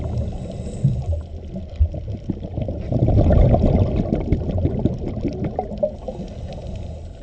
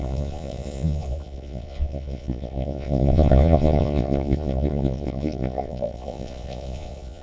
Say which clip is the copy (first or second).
second